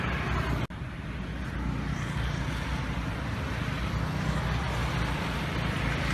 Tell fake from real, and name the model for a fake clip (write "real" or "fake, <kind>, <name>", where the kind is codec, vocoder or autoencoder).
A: real